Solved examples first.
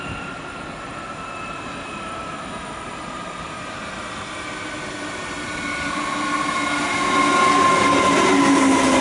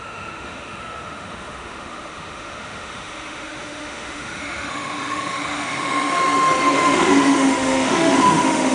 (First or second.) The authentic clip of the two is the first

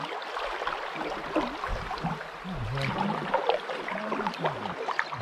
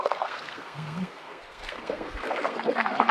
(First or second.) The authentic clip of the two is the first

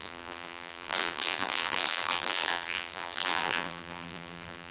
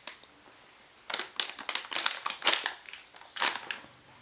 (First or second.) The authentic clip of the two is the second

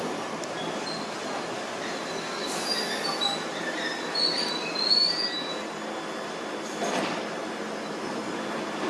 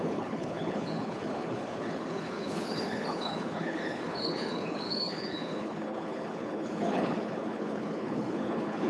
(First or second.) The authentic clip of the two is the first